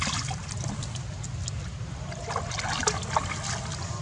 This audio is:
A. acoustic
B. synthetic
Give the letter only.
A